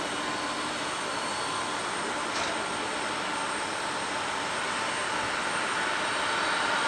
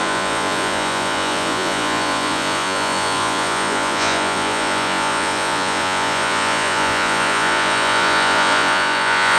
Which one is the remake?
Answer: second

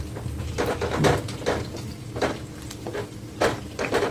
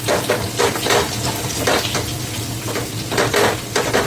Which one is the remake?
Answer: second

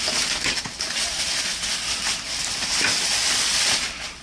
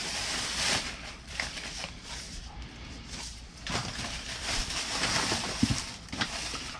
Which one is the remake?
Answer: second